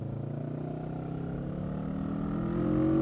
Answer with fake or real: real